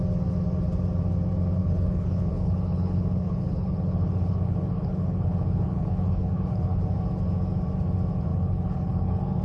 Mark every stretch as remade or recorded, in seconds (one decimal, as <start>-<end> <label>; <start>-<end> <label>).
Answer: 0.0-1.6 recorded; 1.6-6.8 remade; 6.8-8.3 recorded; 8.3-9.4 remade